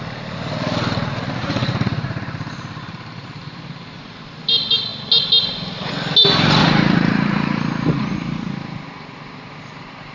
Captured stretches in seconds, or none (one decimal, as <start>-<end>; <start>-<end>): 0.0-1.4; 2.2-6.6; 8.5-10.1